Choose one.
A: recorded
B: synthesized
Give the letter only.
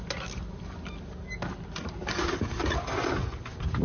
A